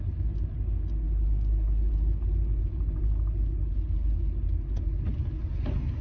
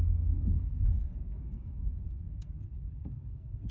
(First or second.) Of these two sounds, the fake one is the second